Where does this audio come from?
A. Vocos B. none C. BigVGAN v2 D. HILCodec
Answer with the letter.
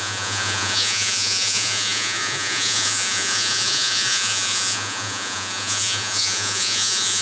A